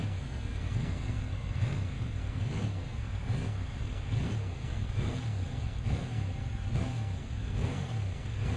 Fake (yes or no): yes